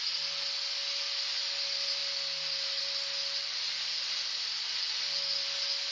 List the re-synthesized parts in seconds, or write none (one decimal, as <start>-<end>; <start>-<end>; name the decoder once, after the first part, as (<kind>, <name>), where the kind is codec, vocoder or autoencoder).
none